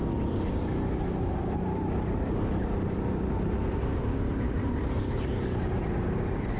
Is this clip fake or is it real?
real